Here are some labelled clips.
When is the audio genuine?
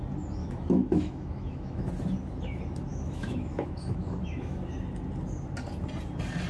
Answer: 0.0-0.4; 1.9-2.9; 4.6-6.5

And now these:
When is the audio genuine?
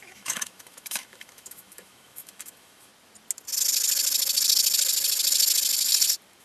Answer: 2.9-6.4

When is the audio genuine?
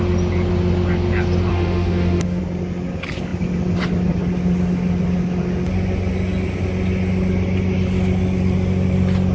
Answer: 0.0-1.5; 2.4-9.3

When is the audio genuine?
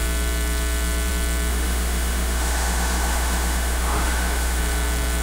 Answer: 0.0-1.5; 4.6-5.2